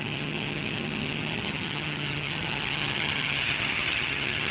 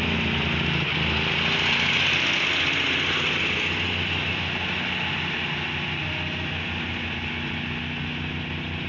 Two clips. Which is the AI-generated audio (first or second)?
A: first